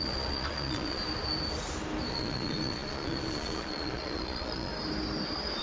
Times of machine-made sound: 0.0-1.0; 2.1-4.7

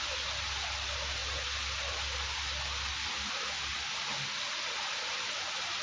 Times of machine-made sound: none

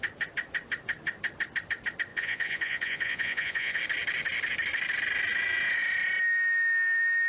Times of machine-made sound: 2.1-3.8

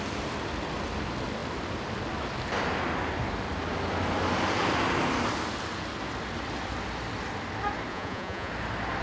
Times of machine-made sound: 7.9-8.5

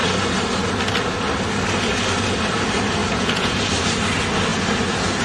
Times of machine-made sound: 3.0-3.7

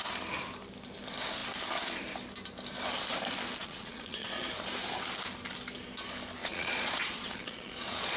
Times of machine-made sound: 3.6-4.5; 6.4-8.2

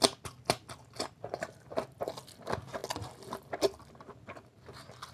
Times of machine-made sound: none